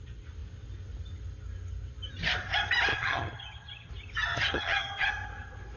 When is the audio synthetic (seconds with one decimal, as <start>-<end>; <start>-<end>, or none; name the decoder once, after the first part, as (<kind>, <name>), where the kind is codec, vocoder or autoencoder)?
2.9-3.9 (vocoder, HiFi-GAN); 4.3-5.1